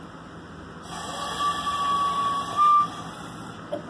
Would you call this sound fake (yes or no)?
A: no